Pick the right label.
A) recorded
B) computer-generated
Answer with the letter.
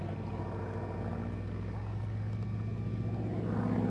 A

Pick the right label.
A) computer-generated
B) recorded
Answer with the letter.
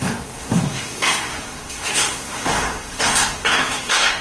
A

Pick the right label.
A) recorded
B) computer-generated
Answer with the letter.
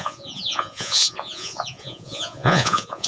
B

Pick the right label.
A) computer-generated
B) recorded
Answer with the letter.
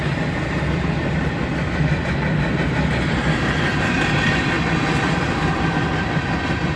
B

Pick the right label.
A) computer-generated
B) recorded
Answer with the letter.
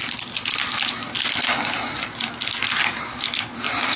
B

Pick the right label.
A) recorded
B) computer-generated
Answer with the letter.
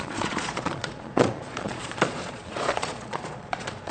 B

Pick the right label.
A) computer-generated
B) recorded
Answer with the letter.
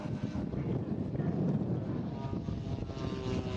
B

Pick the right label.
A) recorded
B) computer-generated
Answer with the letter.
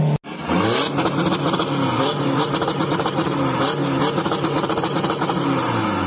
A